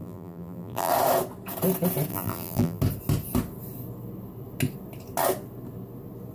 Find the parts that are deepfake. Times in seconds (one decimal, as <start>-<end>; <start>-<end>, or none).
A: 0.0-0.9; 2.1-2.8